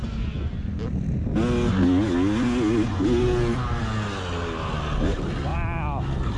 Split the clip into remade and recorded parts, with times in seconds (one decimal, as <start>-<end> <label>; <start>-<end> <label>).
0.0-6.4 recorded